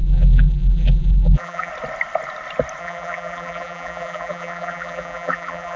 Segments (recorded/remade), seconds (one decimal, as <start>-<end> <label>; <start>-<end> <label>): 0.0-1.7 remade; 1.7-2.8 recorded; 2.8-5.8 remade